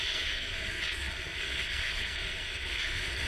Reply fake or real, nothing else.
fake